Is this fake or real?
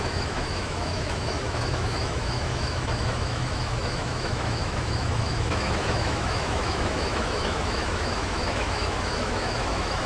fake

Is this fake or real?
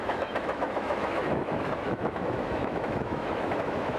fake